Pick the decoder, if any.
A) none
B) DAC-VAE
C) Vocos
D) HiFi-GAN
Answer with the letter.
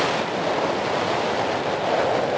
A